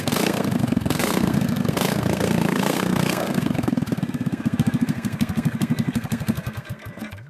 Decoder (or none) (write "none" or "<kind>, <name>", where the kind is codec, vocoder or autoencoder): codec, SNAC